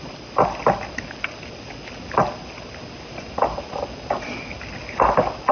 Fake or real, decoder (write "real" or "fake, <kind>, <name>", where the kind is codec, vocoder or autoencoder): real